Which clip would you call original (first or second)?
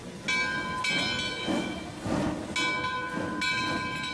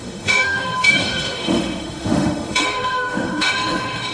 first